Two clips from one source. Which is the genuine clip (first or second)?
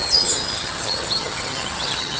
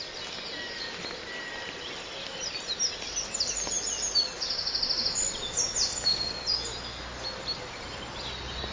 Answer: second